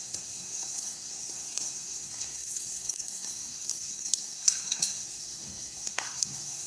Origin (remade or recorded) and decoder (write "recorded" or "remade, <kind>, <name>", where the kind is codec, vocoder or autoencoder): remade, codec, SNAC